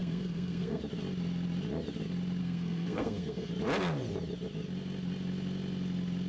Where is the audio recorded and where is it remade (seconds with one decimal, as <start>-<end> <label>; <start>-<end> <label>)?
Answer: 0.0-0.8 remade; 0.8-2.4 recorded; 2.4-3.5 remade; 3.5-6.3 recorded